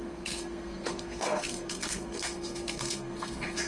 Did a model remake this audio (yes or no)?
yes